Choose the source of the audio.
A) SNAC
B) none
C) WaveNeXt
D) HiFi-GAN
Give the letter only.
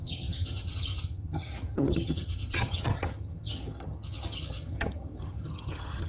D